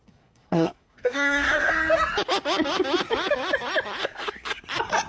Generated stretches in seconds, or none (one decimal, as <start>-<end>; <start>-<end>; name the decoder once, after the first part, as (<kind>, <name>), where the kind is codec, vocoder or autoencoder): 0.0-1.7 (codec, SNAC); 4.0-4.6